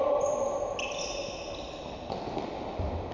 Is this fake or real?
real